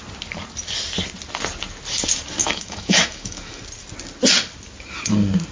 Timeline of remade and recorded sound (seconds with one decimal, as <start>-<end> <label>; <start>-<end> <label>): 0.0-2.4 recorded; 2.4-3.6 remade; 3.6-5.5 recorded